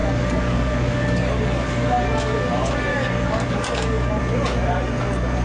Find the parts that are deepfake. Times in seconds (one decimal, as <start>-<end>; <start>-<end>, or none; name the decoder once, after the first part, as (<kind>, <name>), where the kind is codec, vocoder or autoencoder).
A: 0.0-2.5 (codec, DAC); 2.9-4.2